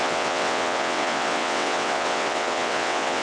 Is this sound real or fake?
fake